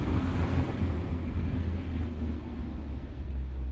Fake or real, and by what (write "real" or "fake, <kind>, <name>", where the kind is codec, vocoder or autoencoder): fake, codec, SNAC